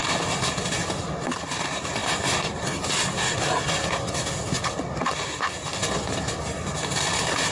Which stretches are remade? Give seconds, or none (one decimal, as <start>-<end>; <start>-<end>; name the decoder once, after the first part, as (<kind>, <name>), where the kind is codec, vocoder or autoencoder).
0.8-1.6 (vocoder, BigVGAN v2)